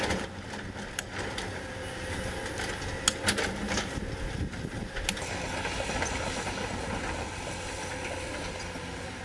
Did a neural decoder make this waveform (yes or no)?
no